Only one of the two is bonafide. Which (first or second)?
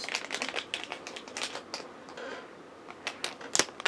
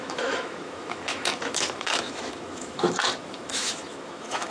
first